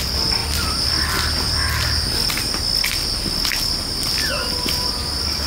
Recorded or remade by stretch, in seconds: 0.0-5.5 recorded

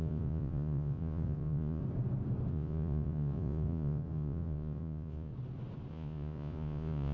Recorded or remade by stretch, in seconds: 0.0-1.8 remade; 1.8-2.5 recorded; 2.5-5.3 remade; 5.3-5.9 recorded; 5.9-7.1 remade

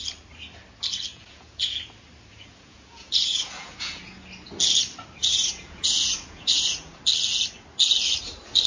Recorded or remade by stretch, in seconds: 0.0-1.1 recorded; 1.1-1.8 remade; 1.8-2.3 recorded; 2.3-4.2 remade; 4.2-5.2 recorded; 5.2-7.0 remade; 7.0-8.7 recorded

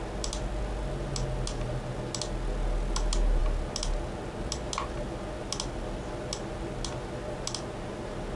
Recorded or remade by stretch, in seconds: 0.0-8.4 recorded

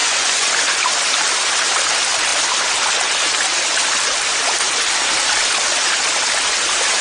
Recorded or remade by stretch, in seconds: 0.0-0.5 remade; 0.5-7.0 recorded

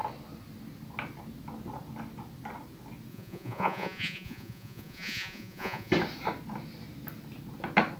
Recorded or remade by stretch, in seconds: 0.0-3.1 recorded; 3.1-5.9 remade; 5.9-8.0 recorded